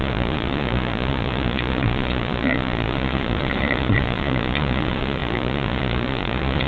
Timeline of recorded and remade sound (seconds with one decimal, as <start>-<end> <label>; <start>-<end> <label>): 0.0-6.7 remade